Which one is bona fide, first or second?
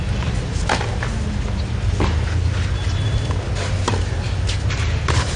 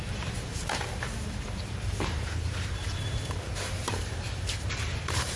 first